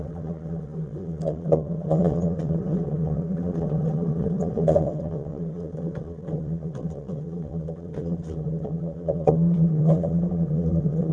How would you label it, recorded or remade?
remade